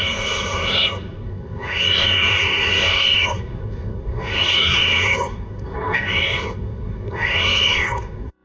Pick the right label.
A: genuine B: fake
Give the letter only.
B